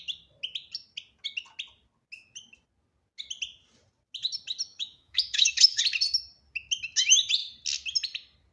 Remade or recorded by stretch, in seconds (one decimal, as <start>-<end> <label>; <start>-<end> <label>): 0.0-4.7 recorded; 4.7-5.8 remade; 5.8-8.5 recorded